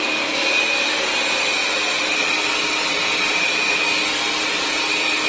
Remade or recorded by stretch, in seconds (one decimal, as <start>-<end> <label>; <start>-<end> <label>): 0.0-5.3 recorded